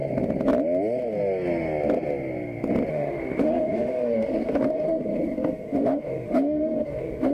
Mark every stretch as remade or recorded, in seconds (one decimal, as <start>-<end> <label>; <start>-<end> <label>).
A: 0.0-2.9 recorded; 2.9-7.3 remade